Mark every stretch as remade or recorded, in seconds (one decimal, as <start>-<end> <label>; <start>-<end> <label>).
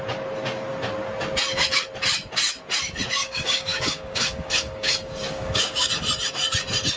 0.0-3.2 recorded; 3.2-5.9 remade; 5.9-7.0 recorded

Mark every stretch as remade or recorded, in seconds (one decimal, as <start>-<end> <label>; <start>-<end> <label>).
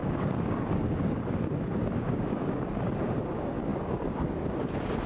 0.0-5.1 remade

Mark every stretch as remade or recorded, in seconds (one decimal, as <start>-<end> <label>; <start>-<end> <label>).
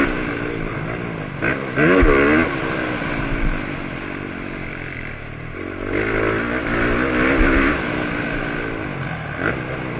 0.0-10.0 recorded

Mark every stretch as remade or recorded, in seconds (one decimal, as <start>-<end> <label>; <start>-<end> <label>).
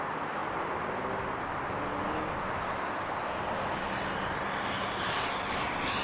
0.0-6.0 recorded